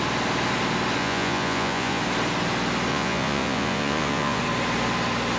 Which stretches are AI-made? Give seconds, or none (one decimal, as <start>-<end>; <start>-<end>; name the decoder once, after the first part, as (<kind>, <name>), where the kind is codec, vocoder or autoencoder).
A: 1.0-2.0 (vocoder, Vocos); 2.9-4.4